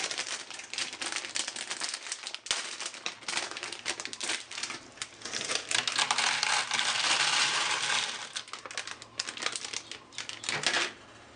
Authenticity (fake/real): real